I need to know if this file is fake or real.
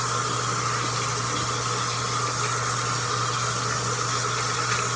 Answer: real